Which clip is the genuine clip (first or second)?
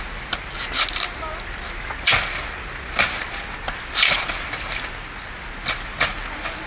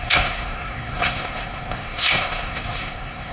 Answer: first